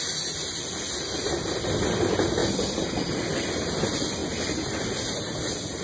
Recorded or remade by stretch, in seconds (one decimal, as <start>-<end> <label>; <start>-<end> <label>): 0.0-5.8 recorded